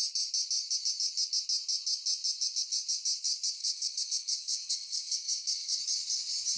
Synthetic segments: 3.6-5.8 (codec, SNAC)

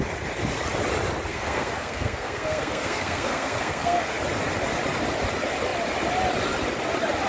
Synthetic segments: 1.3-4.2 (codec, SNAC)

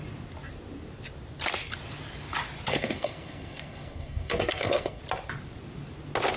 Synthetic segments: 2.7-5.0 (codec, SNAC)

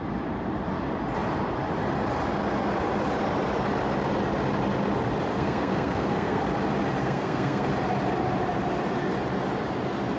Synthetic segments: 5.3-6.4 (codec, SNAC); 7.0-7.7

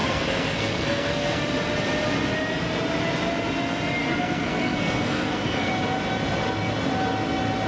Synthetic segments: 0.0-1.4 (codec, SNAC); 4.0-5.7

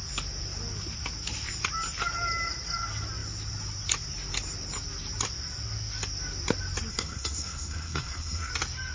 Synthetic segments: 6.9-8.5 (codec, SNAC)